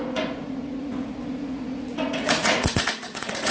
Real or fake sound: fake